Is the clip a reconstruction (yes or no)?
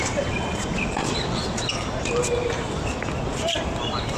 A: no